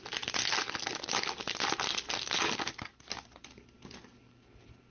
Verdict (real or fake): real